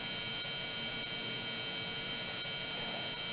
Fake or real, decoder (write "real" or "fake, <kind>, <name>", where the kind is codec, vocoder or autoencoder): fake, vocoder, BigVGAN v2